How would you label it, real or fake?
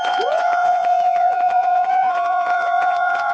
fake